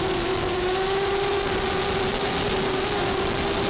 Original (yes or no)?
yes